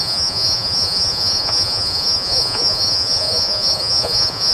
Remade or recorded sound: remade